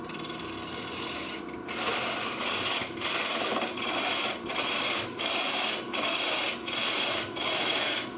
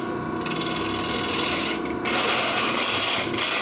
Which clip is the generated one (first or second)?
first